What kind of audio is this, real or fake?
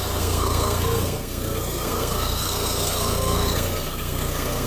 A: fake